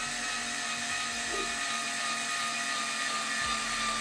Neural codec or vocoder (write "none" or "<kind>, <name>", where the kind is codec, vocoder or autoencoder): none